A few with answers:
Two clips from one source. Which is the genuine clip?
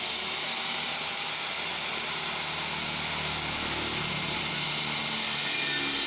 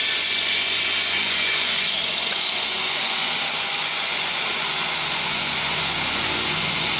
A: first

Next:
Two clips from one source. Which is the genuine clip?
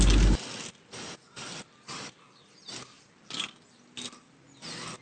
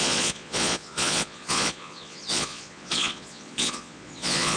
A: first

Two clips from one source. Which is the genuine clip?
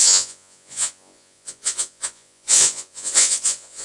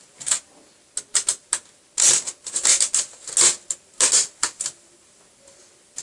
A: second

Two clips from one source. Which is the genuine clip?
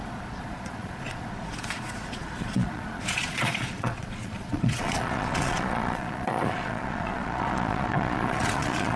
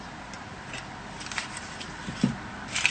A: second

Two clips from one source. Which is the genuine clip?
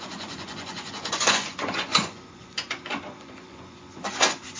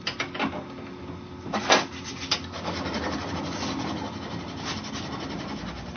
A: second